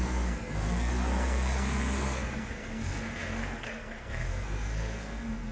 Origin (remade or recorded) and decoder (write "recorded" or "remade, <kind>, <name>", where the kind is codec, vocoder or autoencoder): remade, codec, SNAC